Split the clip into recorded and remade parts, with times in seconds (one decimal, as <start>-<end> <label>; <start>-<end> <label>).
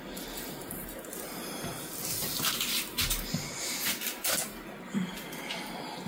0.0-0.6 recorded; 0.6-1.7 remade; 1.7-6.1 recorded